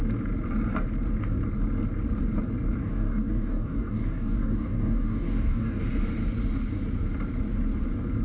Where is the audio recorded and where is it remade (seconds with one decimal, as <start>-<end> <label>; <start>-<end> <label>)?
0.0-2.8 recorded; 2.8-5.8 remade; 5.8-8.2 recorded